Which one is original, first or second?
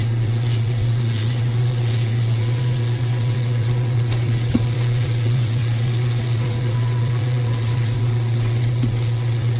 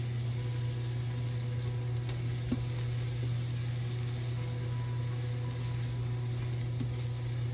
second